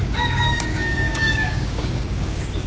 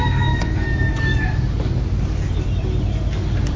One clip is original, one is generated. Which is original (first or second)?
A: second